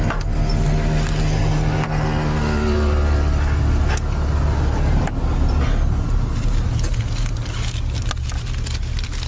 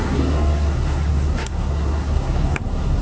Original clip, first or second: first